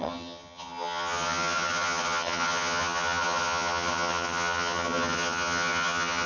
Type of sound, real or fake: fake